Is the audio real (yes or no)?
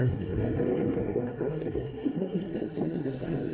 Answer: no